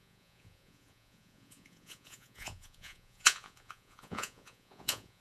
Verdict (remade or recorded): remade